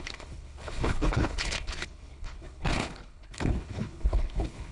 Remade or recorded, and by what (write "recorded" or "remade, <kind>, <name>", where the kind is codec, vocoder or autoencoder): remade, codec, HILCodec